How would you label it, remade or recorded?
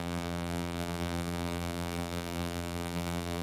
remade